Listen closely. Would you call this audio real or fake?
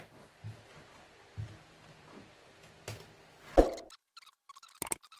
real